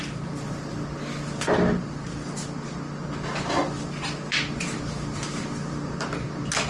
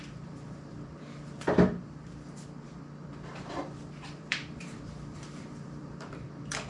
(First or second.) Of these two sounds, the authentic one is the first